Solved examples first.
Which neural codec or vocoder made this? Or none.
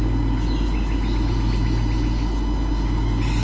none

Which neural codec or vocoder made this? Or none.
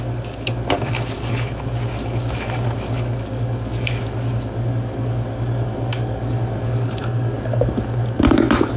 codec, DAC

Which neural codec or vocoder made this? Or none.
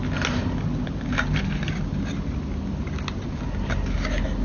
none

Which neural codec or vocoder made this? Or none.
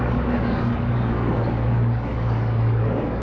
codec, DAC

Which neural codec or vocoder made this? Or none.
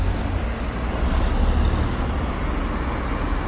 none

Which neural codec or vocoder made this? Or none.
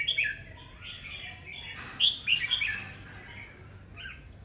none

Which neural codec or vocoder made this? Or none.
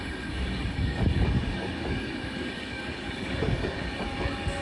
codec, DAC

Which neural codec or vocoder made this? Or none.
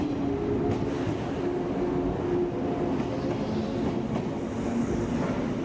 none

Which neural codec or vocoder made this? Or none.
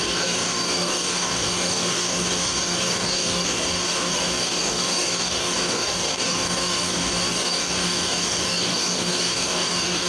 codec, DAC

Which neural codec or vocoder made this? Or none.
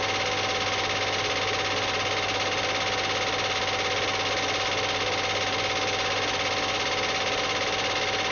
none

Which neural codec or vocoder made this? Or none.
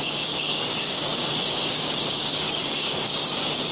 codec, DAC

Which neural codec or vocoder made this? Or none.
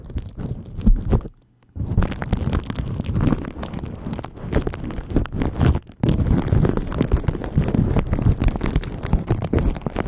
none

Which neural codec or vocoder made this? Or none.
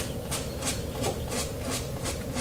none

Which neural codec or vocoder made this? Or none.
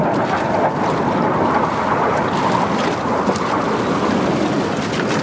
none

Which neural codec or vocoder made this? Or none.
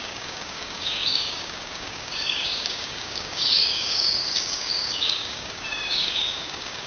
codec, DAC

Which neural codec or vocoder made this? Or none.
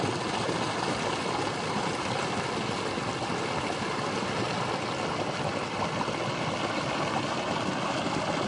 none